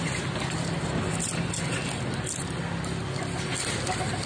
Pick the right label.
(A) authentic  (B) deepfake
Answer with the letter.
A